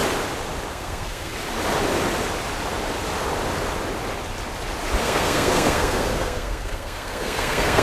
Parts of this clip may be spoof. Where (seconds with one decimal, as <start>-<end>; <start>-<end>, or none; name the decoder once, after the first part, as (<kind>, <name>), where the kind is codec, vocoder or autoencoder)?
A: 0.7-1.3 (codec, SNAC); 5.0-7.8